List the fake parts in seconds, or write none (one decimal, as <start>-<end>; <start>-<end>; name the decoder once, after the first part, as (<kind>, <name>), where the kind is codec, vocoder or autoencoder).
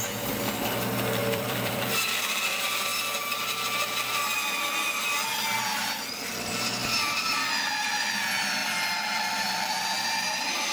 1.2-2.2 (vocoder, BigVGAN v2)